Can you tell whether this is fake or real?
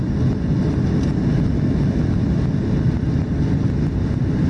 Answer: real